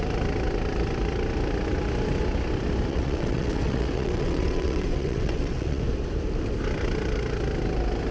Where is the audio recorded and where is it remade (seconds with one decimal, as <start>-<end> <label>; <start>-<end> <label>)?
0.0-2.9 recorded; 2.9-5.8 remade; 5.8-8.1 recorded